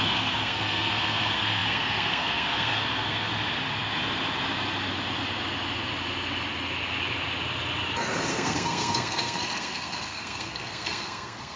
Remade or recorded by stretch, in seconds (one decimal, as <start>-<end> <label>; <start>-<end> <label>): 0.0-3.3 remade; 3.3-8.3 recorded; 8.3-11.6 remade